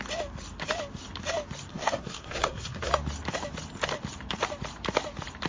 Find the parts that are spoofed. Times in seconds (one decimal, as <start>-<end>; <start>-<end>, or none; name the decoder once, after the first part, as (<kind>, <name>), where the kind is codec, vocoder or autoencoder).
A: 1.7-2.9 (codec, SNAC)